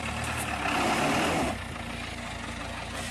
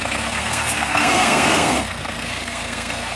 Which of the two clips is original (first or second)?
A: first